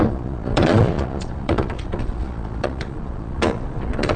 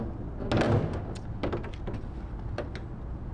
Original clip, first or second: second